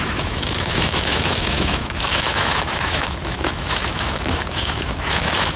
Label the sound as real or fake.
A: fake